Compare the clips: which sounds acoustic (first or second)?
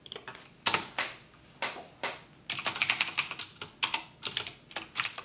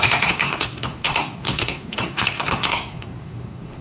first